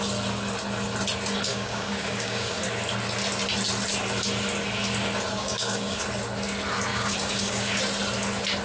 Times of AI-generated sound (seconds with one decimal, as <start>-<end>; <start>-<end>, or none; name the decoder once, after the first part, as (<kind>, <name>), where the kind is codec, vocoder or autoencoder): 1.5-2.6 (codec, DAC); 5.4-6.0; 6.9-7.8